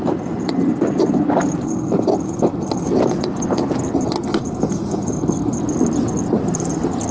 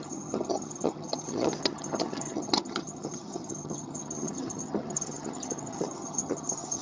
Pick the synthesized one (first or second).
second